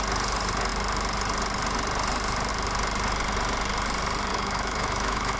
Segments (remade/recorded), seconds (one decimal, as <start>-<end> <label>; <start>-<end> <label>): 0.0-4.3 recorded; 4.3-5.4 remade